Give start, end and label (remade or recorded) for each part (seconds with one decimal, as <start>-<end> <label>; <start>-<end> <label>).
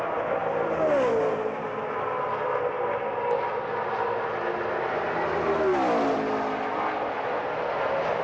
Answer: 0.0-8.2 recorded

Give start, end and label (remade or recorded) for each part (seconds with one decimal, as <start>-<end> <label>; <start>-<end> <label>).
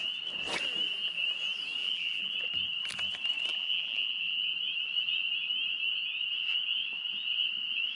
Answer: 0.0-1.8 recorded; 1.8-2.3 remade; 2.3-3.5 recorded; 3.5-4.5 remade; 4.5-7.9 recorded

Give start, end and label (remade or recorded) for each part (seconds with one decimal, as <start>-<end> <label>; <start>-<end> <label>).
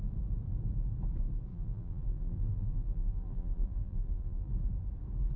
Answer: 0.0-1.5 recorded; 1.5-4.5 remade; 4.5-5.4 recorded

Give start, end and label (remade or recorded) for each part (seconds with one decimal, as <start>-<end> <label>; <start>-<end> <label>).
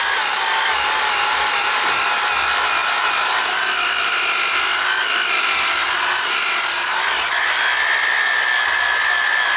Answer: 0.0-9.6 recorded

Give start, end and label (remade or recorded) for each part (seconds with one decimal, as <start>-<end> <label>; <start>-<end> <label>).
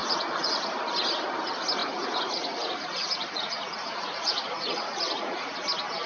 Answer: 0.0-0.7 remade; 0.7-1.8 recorded; 1.8-5.5 remade; 5.5-6.1 recorded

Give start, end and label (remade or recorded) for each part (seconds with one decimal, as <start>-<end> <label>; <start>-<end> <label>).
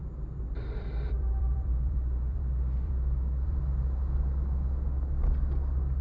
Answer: 0.0-3.6 remade; 3.6-6.0 recorded